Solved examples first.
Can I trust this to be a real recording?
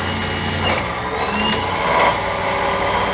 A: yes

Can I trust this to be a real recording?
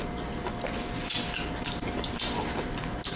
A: yes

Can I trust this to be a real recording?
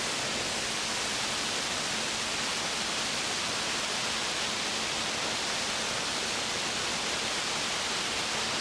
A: yes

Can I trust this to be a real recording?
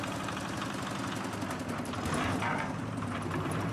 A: no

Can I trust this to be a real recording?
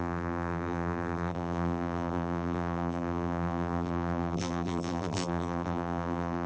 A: no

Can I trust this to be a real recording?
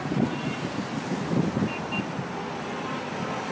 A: no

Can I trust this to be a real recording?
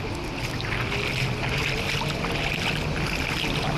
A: yes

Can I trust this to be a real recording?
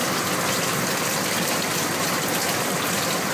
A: no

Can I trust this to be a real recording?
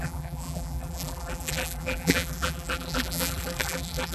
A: no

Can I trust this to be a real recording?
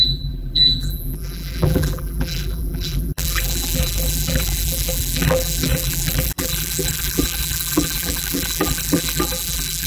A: no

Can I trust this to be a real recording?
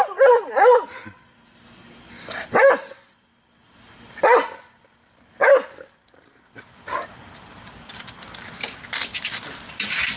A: yes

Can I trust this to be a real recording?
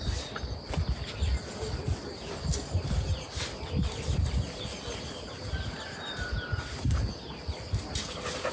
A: yes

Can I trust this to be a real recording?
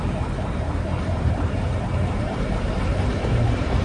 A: no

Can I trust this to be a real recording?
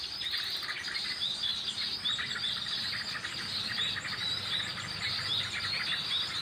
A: yes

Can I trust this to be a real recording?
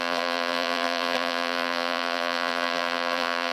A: no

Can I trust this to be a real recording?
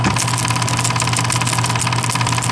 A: yes